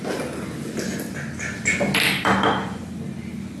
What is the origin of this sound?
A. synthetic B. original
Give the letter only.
B